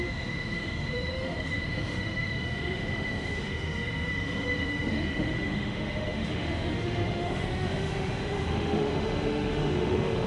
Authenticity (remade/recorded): remade